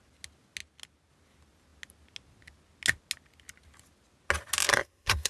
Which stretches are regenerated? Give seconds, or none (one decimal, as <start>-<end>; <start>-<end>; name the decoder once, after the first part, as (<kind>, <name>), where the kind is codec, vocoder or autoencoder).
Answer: 4.7-5.3 (codec, SNAC)